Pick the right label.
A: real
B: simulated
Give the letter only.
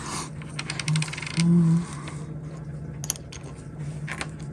A